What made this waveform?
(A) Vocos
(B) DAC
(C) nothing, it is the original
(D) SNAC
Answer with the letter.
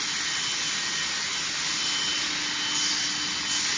C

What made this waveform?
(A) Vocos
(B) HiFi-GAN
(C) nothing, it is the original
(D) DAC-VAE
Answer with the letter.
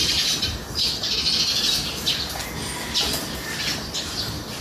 C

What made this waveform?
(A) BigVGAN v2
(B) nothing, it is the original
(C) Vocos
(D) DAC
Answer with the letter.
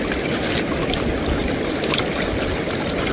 B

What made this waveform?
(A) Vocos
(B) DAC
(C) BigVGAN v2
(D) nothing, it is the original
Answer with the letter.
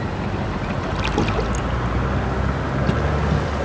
D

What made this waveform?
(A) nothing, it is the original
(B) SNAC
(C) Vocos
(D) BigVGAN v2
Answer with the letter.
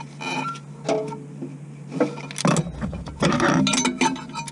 A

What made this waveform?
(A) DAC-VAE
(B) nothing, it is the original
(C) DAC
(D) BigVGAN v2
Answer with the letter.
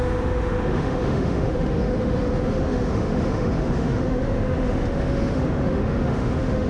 A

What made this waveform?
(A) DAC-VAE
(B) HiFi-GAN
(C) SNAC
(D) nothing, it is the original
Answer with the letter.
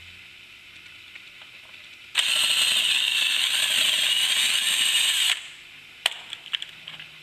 D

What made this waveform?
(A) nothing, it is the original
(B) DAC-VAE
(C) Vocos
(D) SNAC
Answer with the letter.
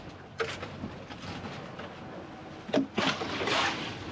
A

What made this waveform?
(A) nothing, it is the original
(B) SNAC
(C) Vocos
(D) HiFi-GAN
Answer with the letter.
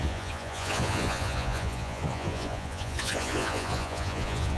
C